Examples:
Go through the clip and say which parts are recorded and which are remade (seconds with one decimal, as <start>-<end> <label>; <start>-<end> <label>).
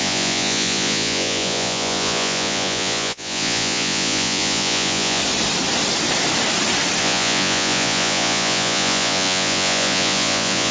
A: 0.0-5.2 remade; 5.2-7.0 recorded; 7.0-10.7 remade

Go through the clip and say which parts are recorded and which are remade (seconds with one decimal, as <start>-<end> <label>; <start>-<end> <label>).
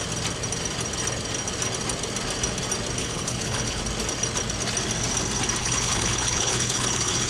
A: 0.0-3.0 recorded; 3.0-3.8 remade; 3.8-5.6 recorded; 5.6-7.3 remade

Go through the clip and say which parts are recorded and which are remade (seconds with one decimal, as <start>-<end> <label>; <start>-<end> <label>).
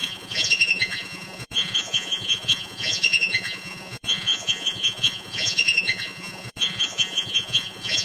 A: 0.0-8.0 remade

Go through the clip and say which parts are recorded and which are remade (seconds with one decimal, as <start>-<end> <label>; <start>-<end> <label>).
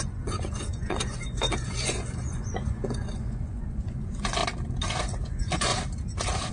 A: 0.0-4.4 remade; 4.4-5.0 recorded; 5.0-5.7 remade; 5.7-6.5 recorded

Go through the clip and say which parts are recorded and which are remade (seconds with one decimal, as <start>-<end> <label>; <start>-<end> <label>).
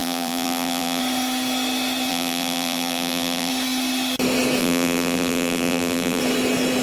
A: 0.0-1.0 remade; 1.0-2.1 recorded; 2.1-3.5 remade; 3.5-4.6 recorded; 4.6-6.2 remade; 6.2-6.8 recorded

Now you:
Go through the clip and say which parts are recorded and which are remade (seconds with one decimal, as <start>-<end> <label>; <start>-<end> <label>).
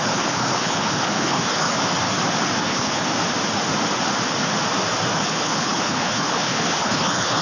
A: 0.0-1.8 remade; 1.8-2.6 recorded; 2.6-3.1 remade; 3.1-5.1 recorded; 5.1-7.4 remade